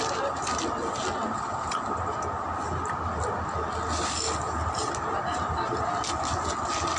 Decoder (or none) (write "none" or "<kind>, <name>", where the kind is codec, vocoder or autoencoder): none